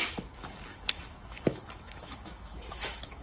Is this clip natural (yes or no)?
no